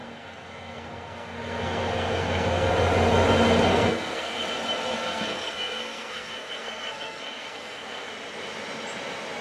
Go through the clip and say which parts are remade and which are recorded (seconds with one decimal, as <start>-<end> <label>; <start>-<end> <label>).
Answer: 0.0-2.7 remade; 2.7-3.7 recorded; 3.7-4.4 remade; 4.4-4.9 recorded; 4.9-8.1 remade; 8.1-9.4 recorded